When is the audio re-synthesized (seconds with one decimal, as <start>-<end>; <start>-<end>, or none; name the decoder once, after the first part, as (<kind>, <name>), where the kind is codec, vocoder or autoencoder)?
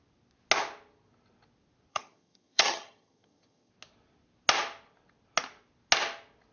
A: 1.9-3.7 (vocoder, HiFi-GAN)